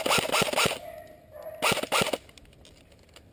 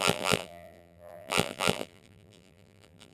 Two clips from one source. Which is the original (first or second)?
first